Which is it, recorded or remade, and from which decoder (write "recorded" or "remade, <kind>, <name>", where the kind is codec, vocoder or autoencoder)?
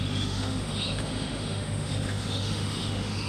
remade, autoencoder, DAC-VAE